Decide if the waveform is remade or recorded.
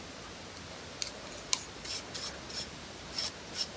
recorded